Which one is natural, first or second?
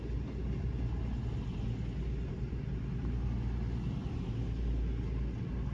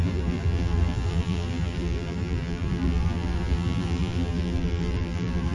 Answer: first